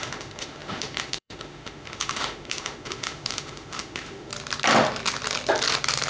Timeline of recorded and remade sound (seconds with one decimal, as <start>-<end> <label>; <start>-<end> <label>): 0.0-4.3 remade; 4.3-6.1 recorded